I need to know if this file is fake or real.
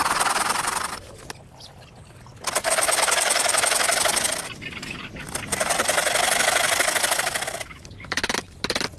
real